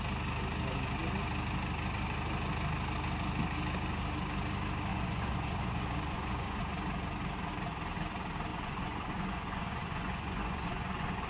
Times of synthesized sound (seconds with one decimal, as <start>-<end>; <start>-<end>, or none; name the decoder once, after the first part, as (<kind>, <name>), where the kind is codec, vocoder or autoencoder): 4.9-6.6 (vocoder, Vocos); 8.5-11.3